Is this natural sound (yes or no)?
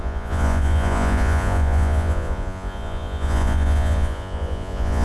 no